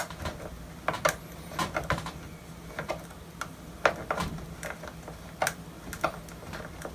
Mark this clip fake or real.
real